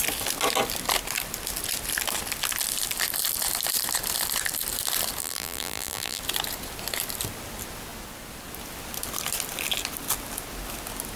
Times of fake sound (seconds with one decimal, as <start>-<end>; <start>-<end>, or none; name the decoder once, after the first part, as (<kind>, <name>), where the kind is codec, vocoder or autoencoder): 5.2-6.2 (vocoder, BigVGAN v2)